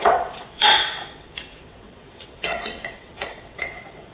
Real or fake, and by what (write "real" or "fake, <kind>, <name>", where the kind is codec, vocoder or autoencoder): fake, vocoder, WaveNeXt